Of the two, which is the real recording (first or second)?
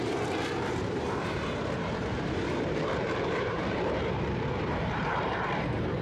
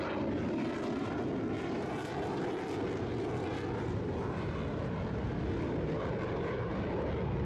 second